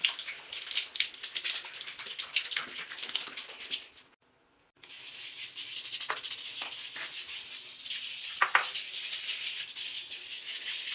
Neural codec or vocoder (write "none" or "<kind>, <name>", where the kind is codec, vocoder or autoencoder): none